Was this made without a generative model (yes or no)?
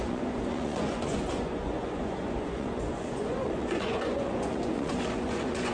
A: no